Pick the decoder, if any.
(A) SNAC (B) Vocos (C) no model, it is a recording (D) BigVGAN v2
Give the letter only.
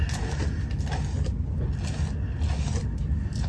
C